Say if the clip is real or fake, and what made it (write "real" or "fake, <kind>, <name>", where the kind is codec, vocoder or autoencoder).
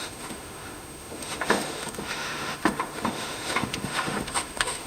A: fake, autoencoder, DAC-VAE